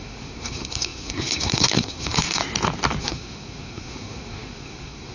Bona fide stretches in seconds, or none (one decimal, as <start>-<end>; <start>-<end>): 2.4-3.0